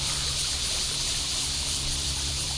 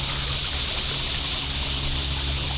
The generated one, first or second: first